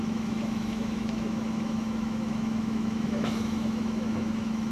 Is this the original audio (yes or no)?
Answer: no